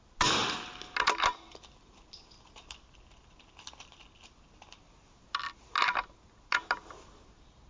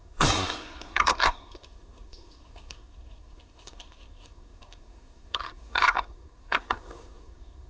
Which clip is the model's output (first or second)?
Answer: second